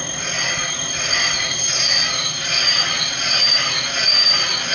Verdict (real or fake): real